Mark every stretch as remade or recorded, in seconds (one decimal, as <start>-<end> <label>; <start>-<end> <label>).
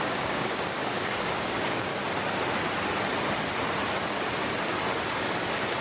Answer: 0.0-1.9 remade; 1.9-5.8 recorded